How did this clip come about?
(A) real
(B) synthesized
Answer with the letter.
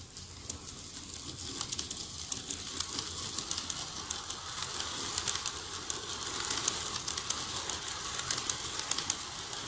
A